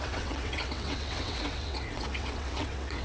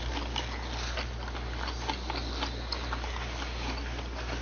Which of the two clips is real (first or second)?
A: second